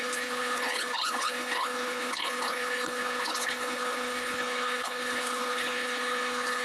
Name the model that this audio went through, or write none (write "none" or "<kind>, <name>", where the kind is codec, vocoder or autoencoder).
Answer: codec, HILCodec